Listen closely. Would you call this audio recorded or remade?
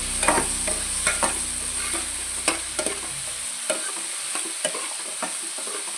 recorded